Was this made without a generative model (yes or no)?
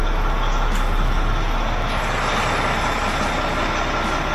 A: yes